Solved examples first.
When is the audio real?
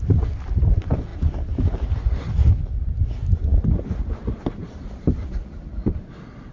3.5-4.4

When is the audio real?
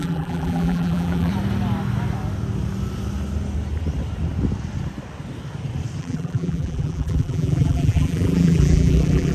1.3-6.0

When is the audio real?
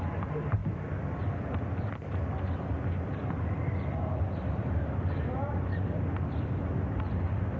0.0-7.6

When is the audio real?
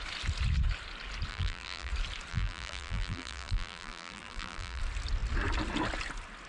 0.0-1.3; 1.9-2.3; 4.8-6.5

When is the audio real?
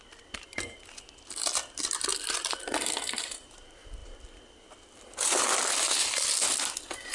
0.0-7.1